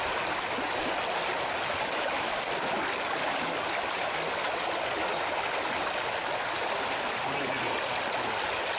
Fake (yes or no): no